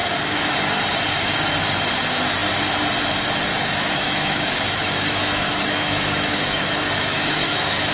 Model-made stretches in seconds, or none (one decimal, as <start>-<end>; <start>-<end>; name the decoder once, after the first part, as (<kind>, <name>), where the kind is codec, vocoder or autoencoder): 3.5-7.9 (autoencoder, DAC-VAE)